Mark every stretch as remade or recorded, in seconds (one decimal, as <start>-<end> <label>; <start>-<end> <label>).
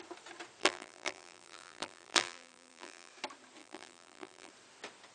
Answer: 0.0-0.6 recorded; 0.6-3.1 remade; 3.1-3.6 recorded; 3.6-4.5 remade; 4.5-5.1 recorded